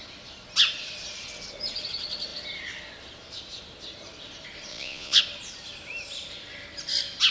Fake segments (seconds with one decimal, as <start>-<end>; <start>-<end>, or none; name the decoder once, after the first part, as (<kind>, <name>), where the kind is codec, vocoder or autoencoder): 4.7-5.2 (vocoder, Vocos)